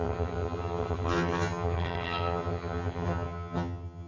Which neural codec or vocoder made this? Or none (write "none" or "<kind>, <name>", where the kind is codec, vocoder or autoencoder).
vocoder, HiFi-GAN